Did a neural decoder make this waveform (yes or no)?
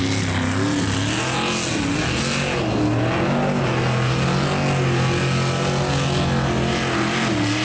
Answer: no